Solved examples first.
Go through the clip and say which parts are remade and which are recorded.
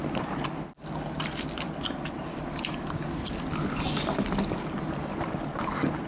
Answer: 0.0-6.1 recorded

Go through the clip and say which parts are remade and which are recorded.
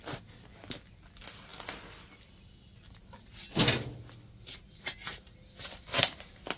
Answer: 0.0-6.6 recorded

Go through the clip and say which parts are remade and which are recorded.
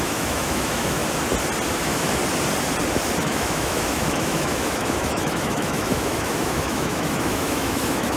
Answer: 0.0-1.0 remade; 1.0-1.8 recorded; 1.8-2.2 remade; 2.2-3.2 recorded; 3.2-8.2 remade